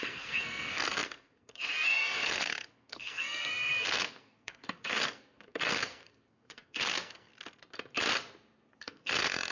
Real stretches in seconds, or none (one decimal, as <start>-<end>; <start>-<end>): 7.3-8.8